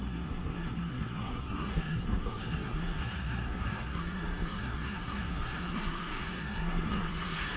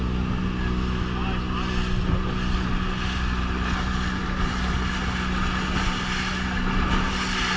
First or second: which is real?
second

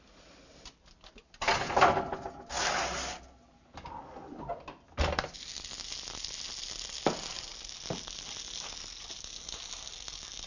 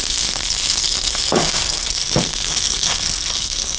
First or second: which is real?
first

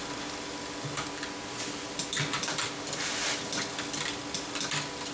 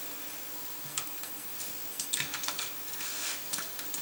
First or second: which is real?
first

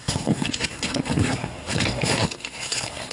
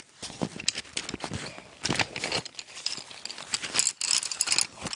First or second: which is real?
second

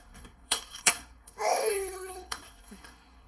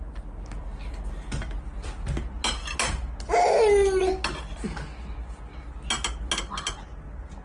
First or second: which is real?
second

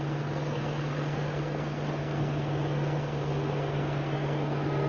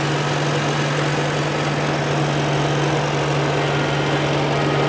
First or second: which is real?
second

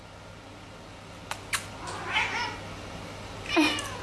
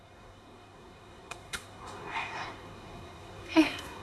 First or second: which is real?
first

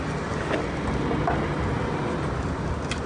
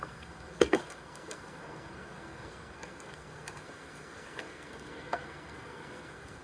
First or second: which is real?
first